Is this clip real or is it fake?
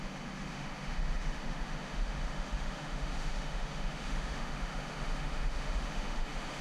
fake